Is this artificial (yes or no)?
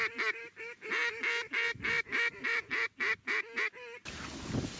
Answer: no